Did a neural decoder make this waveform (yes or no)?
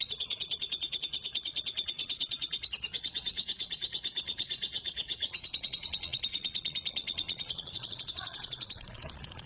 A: yes